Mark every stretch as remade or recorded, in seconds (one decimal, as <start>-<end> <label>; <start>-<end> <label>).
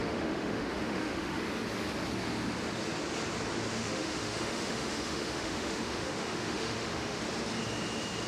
0.0-1.4 remade; 1.4-3.8 recorded; 3.8-7.2 remade; 7.2-8.3 recorded